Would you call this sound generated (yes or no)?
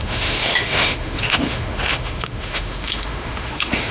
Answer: yes